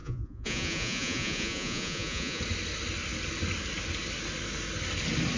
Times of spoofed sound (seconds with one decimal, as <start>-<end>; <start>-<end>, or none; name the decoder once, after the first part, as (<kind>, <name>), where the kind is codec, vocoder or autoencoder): 0.0-2.4 (vocoder, Vocos)